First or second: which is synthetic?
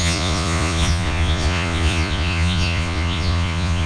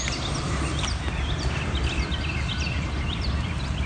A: first